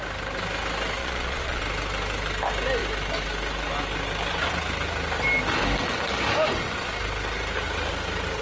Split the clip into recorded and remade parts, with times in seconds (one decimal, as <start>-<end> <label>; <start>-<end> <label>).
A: 0.0-1.0 recorded; 1.0-1.6 remade; 1.6-8.4 recorded

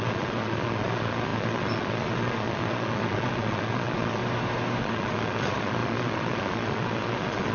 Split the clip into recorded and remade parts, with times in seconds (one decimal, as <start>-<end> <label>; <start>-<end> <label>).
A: 0.0-4.2 remade; 4.2-4.8 recorded; 4.8-7.5 remade